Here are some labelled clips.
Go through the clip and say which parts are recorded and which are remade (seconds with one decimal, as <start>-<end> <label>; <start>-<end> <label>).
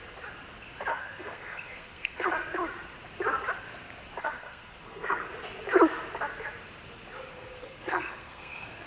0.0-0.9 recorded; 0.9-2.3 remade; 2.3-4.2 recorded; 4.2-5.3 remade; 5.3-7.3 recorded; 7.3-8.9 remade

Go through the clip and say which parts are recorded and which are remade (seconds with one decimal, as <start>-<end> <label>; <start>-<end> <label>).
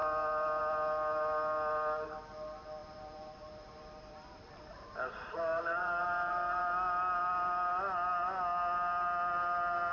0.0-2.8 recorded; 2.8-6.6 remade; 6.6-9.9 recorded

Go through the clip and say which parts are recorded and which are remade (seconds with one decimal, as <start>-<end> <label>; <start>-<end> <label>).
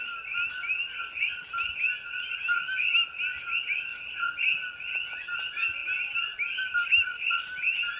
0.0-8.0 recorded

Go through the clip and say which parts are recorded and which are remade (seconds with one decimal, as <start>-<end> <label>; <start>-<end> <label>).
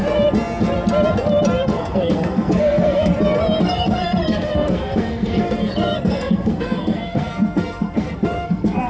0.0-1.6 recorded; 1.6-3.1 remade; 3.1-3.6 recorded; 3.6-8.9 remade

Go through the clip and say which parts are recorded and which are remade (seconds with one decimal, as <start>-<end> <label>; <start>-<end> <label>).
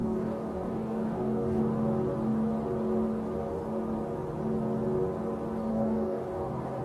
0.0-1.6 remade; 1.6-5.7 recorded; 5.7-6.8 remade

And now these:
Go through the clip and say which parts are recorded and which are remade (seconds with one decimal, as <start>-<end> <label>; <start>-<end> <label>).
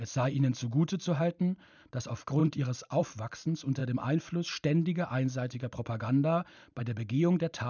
0.0-2.4 recorded; 2.4-3.0 remade; 3.0-7.7 recorded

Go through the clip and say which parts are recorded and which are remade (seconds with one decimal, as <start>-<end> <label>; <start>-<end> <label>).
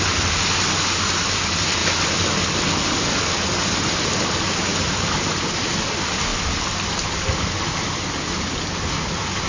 0.0-9.5 recorded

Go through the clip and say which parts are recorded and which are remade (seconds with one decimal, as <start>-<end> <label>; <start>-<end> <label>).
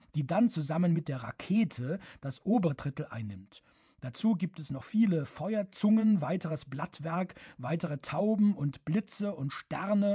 0.0-2.7 remade; 2.7-5.7 recorded; 5.7-8.2 remade; 8.2-10.1 recorded